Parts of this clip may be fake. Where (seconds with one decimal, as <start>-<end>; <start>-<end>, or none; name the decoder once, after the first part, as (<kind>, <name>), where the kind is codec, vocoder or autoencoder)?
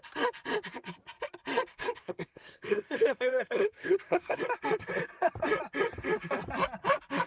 1.7-4.4 (codec, SNAC)